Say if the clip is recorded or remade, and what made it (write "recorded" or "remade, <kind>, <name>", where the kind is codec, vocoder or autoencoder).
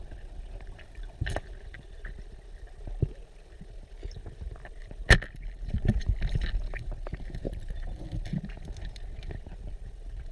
recorded